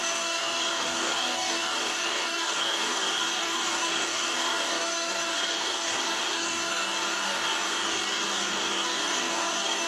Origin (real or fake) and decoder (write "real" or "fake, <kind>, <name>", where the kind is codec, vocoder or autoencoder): fake, codec, DAC